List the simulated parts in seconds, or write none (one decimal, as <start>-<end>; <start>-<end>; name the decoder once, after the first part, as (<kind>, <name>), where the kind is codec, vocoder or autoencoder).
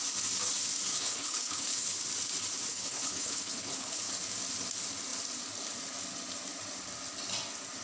0.9-2.0 (codec, HILCodec); 2.7-4.1